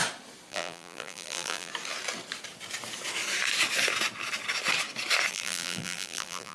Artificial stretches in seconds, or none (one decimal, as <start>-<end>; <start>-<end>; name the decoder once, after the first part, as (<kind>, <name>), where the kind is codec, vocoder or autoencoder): 0.5-1.7 (vocoder, BigVGAN v2); 5.3-6.5